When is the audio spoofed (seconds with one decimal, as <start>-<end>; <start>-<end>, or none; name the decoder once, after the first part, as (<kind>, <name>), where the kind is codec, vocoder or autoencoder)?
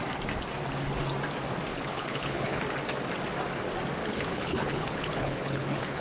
1.7-2.6 (codec, HILCodec); 4.0-6.0